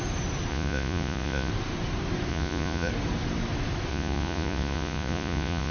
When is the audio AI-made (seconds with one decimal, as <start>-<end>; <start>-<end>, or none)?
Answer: 0.5-1.5; 2.3-2.9; 3.9-5.7